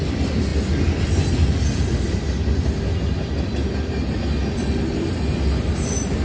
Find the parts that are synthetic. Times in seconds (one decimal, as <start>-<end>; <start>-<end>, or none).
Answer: none